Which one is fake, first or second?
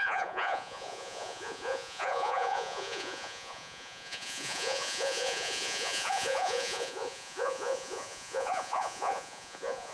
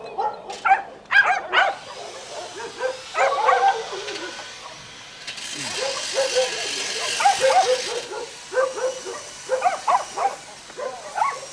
first